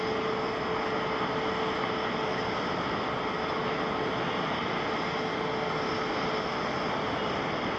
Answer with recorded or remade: recorded